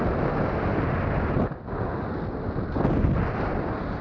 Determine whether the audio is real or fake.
real